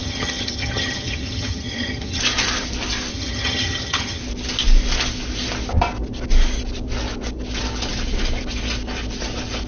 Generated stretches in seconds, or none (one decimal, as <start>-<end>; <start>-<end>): 0.0-2.2; 3.1-4.2